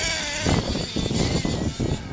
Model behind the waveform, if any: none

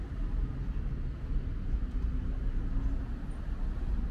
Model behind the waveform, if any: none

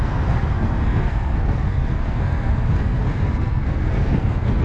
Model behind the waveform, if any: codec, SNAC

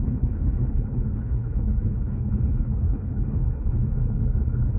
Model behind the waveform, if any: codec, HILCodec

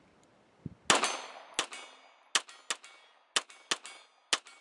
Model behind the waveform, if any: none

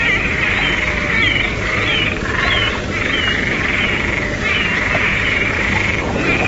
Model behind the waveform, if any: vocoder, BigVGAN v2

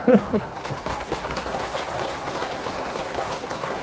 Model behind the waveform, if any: codec, SNAC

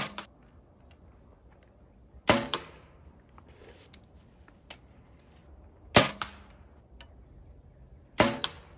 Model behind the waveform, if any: none